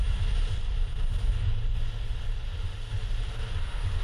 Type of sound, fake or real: real